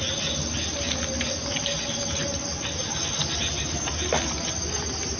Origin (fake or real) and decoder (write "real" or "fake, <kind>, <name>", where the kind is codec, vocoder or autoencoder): real